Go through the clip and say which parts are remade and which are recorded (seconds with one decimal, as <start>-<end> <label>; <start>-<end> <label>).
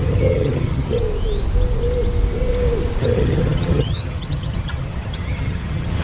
0.0-1.0 remade; 1.0-3.0 recorded; 3.0-6.0 remade